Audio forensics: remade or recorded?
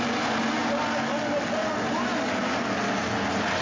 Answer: recorded